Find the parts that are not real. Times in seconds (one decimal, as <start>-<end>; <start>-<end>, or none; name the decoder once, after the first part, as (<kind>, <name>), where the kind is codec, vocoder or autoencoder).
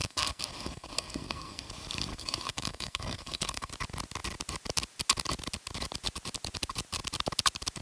0.0-1.7 (codec, SNAC); 2.1-3.7